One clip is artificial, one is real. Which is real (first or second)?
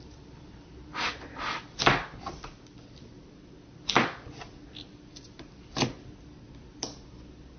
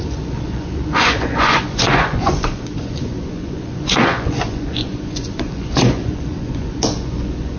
first